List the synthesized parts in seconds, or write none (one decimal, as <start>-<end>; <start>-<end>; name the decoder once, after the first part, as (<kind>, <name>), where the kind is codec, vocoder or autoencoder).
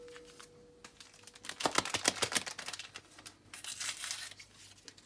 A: none